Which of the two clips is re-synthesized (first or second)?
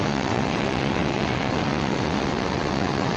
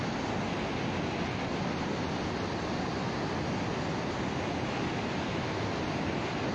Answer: first